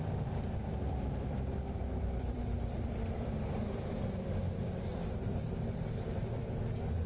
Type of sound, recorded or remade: remade